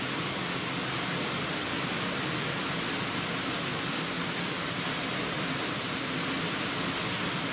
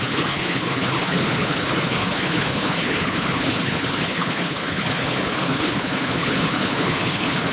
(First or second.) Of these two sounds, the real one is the first